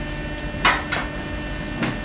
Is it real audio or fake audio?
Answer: real